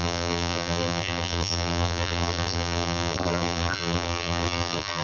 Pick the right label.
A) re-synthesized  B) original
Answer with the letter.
A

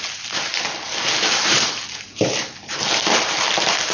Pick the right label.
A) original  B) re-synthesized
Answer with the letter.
B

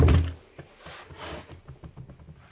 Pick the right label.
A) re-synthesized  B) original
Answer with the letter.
B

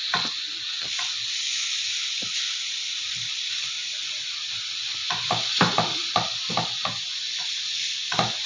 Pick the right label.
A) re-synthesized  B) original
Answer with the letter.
A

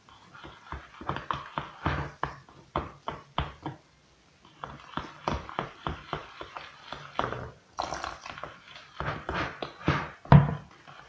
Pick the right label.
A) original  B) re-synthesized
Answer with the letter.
A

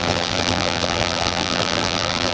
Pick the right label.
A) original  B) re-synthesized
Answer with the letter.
B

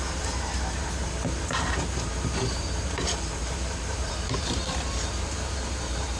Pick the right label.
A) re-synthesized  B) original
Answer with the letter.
A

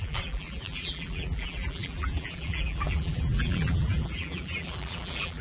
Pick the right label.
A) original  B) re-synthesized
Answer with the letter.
B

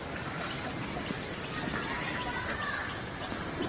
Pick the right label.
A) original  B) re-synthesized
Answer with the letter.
A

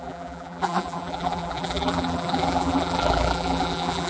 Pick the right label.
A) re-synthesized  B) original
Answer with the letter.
A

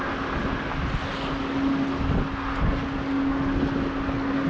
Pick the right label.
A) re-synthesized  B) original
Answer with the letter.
B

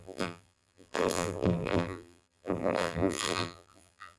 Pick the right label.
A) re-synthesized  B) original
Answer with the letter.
A